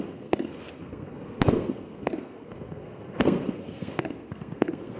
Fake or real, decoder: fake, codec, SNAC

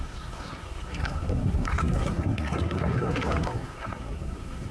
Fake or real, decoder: fake, codec, SNAC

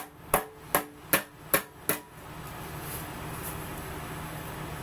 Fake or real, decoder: real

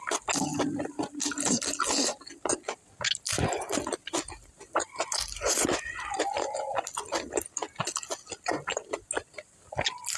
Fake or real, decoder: real